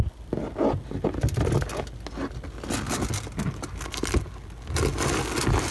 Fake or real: real